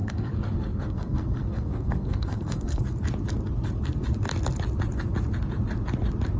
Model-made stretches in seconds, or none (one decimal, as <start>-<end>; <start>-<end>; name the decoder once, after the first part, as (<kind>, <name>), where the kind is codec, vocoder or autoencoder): 0.0-2.8 (codec, SNAC)